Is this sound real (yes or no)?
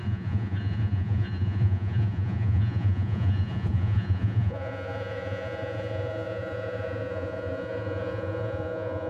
no